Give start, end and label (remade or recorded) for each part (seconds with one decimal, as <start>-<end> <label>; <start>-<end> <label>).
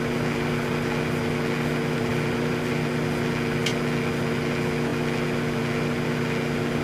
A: 0.0-2.1 recorded; 2.1-2.7 remade; 2.7-6.8 recorded